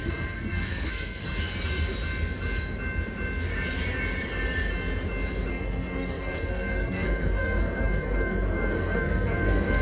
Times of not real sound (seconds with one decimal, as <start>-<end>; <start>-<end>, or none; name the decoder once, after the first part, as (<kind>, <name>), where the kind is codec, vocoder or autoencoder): 0.0-1.2 (codec, SNAC); 5.5-9.8